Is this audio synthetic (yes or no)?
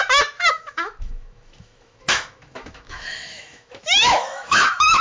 yes